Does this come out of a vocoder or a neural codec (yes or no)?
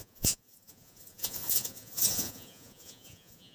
yes